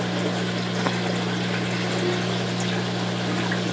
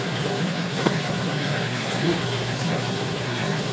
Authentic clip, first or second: first